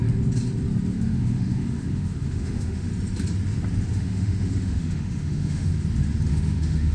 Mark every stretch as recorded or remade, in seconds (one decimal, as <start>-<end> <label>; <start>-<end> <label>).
0.0-0.9 recorded; 0.9-2.9 remade; 2.9-3.9 recorded; 3.9-5.7 remade; 5.7-6.3 recorded; 6.3-6.9 remade